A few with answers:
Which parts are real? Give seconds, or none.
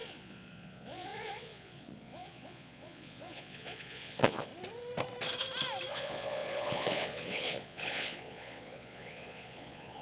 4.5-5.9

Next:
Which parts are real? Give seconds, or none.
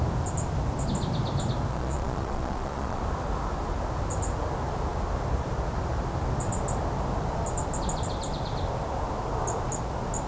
0.0-1.7; 3.0-10.3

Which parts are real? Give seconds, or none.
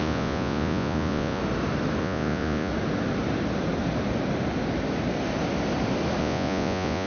1.4-2.0; 2.7-6.2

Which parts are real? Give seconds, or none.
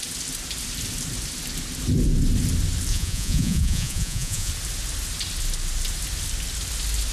0.0-2.9; 4.5-7.1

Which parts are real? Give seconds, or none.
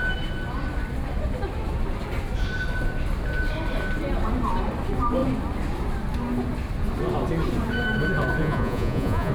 0.0-8.4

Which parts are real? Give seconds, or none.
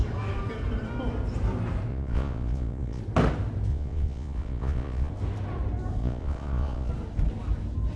0.0-1.9; 3.0-3.7; 5.1-6.0; 6.9-8.0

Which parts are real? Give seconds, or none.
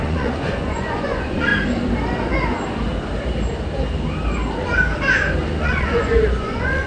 1.5-5.6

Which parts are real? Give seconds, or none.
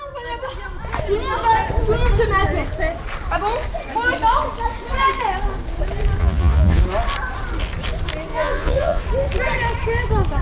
0.0-6.2; 6.8-8.3; 9.0-10.4